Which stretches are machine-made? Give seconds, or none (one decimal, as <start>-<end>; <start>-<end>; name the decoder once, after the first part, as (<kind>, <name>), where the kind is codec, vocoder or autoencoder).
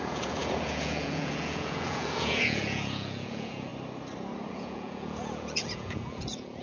0.0-3.7 (vocoder, Vocos); 4.5-6.6